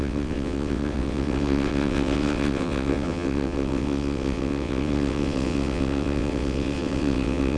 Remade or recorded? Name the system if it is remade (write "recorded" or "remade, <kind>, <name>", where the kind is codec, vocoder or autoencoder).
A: remade, vocoder, WaveNeXt